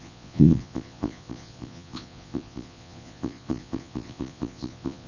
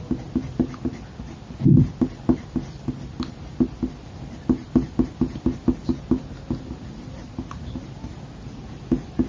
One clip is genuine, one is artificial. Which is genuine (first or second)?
second